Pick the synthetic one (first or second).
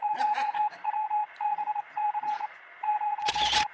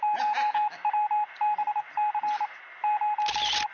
first